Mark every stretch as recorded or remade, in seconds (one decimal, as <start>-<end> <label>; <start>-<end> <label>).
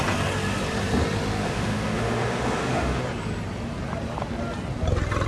0.0-1.4 recorded; 1.4-3.0 remade; 3.0-5.3 recorded